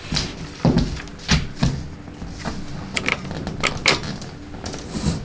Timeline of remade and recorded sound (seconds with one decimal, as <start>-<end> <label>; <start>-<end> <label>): 0.0-5.2 recorded